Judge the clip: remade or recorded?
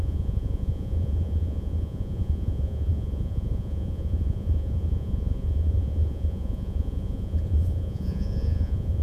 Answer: remade